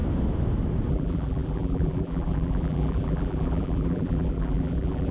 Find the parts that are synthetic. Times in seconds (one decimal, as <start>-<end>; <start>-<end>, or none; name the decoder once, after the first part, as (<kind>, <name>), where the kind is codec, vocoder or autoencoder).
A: 0.9-5.1 (vocoder, BigVGAN v2)